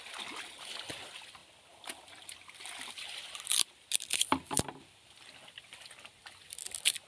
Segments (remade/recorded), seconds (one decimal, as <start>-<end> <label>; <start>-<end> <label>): 0.0-7.1 recorded